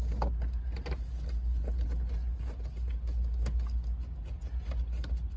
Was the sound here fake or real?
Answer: real